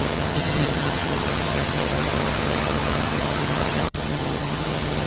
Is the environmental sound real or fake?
fake